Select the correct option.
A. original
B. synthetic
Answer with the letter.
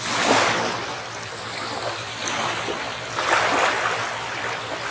A